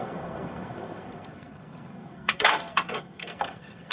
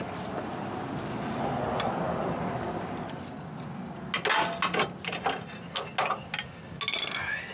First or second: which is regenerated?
first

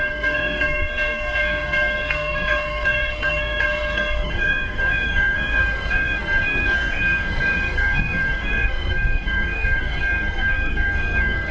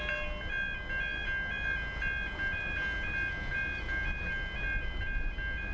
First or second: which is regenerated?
first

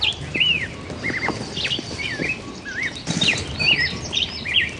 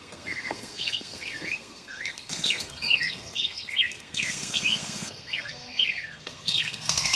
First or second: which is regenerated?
second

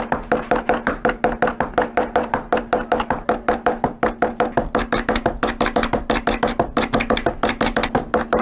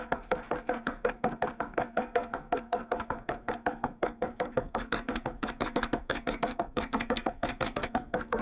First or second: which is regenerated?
second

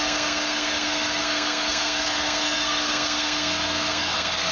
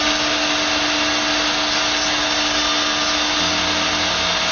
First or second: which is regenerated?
first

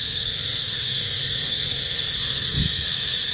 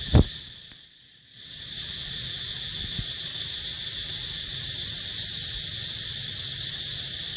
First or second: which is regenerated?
first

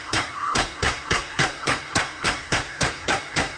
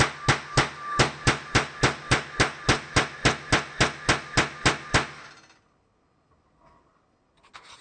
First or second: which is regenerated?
first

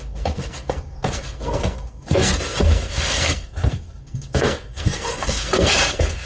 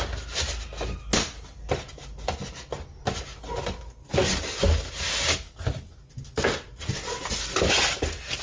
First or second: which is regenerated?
first